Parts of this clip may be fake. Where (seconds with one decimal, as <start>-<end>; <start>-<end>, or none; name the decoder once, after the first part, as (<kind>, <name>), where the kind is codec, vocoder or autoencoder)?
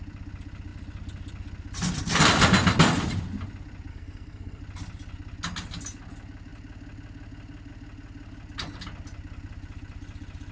3.9-4.6 (codec, SNAC)